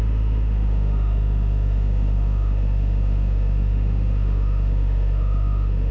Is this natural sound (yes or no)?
no